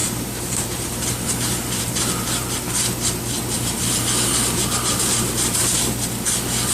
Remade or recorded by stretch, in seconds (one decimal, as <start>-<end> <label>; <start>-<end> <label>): 0.0-6.7 remade